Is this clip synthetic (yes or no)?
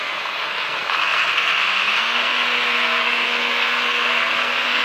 yes